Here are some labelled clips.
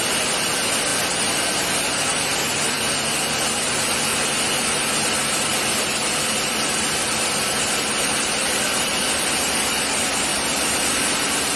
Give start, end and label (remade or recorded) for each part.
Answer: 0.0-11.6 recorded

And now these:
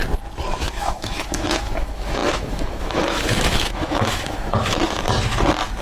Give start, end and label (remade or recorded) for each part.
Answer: 0.0-0.6 recorded; 0.6-4.8 remade; 4.8-5.8 recorded

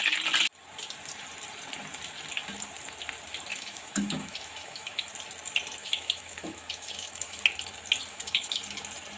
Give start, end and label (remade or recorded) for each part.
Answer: 0.0-3.5 recorded; 3.5-5.1 remade; 5.1-5.8 recorded; 5.8-7.4 remade; 7.4-8.1 recorded; 8.1-8.6 remade; 8.6-9.2 recorded

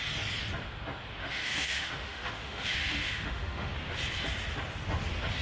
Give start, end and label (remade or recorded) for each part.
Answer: 0.0-1.2 recorded; 1.2-3.7 remade; 3.7-5.4 recorded

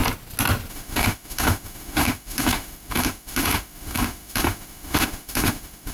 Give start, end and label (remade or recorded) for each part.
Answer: 0.0-0.7 recorded; 0.7-5.9 remade